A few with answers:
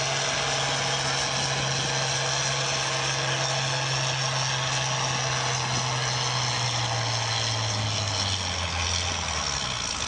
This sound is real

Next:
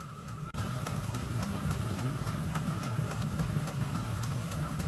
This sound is fake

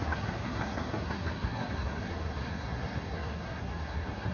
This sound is fake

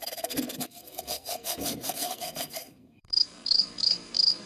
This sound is fake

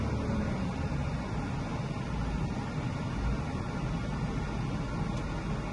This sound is real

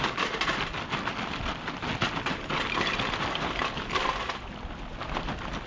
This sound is real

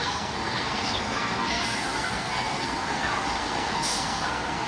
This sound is fake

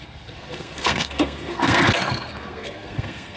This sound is fake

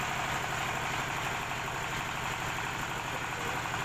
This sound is real